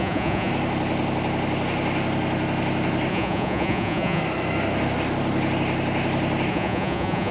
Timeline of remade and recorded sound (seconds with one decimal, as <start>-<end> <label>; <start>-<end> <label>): 0.0-0.5 remade; 0.5-3.1 recorded; 3.1-4.2 remade; 4.2-6.5 recorded; 6.5-7.3 remade

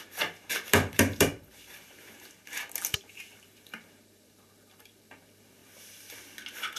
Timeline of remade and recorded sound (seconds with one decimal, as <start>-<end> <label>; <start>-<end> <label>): 0.0-5.6 remade; 5.6-6.8 recorded

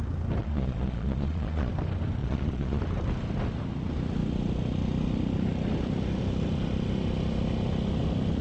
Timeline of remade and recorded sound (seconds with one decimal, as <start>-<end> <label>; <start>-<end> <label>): 0.0-0.4 recorded; 0.4-1.7 remade; 1.7-2.2 recorded; 2.2-2.8 remade; 2.8-8.4 recorded

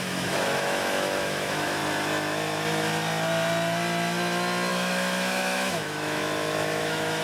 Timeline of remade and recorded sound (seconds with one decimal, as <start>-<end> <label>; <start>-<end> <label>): 0.0-1.8 remade; 1.8-4.7 recorded; 4.7-6.2 remade; 6.2-6.8 recorded; 6.8-7.2 remade